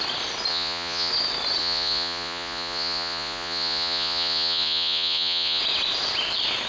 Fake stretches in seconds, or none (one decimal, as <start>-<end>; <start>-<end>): 0.5-1.1; 1.6-5.6